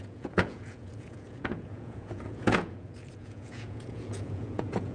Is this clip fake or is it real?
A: fake